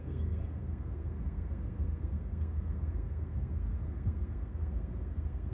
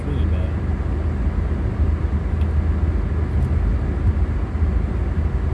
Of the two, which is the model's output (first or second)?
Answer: first